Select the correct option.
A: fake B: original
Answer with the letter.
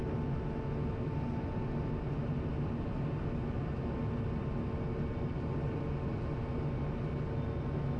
B